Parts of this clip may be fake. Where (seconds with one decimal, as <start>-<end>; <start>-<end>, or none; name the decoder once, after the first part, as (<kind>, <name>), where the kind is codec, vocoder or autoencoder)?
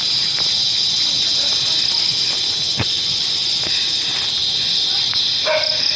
2.7-3.7 (vocoder, Vocos); 4.4-5.2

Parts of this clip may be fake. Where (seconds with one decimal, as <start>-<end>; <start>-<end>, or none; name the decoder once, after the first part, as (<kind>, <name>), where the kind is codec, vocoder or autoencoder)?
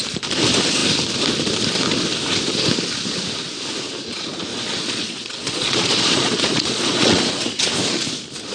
4.5-7.4 (vocoder, Vocos)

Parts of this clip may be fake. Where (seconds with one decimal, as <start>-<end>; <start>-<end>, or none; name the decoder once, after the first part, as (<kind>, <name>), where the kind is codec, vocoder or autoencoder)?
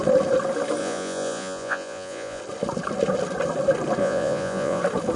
0.8-2.4 (vocoder, Vocos); 4.0-4.8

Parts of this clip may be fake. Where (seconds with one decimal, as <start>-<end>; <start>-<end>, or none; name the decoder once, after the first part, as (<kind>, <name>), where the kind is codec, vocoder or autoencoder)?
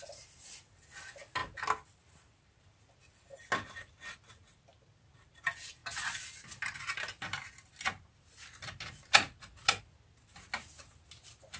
none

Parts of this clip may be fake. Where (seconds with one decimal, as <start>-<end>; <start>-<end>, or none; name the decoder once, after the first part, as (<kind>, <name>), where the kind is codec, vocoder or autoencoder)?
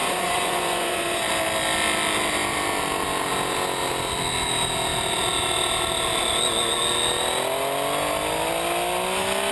0.0-1.2 (vocoder, Vocos)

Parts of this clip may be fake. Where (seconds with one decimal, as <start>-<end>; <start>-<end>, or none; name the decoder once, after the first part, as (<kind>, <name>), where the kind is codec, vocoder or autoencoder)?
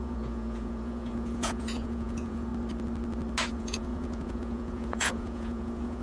0.0-2.5 (vocoder, Vocos); 3.5-6.0